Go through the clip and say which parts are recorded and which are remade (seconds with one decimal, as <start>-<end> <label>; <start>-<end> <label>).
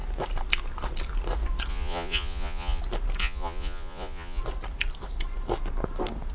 0.0-1.7 recorded; 1.7-2.8 remade; 2.8-3.2 recorded; 3.2-4.4 remade; 4.4-6.3 recorded